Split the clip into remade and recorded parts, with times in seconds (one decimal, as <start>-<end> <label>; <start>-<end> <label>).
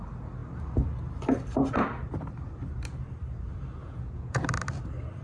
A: 0.0-3.8 recorded; 3.8-4.4 remade; 4.4-5.2 recorded